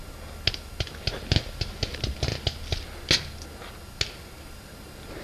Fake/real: real